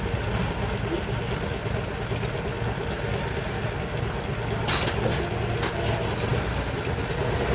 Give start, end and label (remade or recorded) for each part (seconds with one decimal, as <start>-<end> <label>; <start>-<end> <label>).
0.0-7.5 recorded